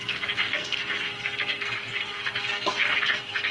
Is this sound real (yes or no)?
no